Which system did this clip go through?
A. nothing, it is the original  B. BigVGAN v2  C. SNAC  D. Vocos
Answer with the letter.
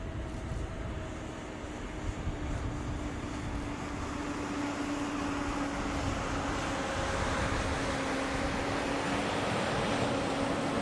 A